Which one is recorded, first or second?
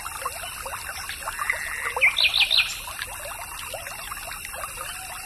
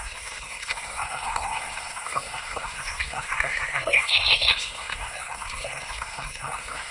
first